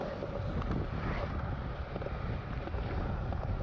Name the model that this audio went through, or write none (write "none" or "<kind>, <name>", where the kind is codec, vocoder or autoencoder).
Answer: none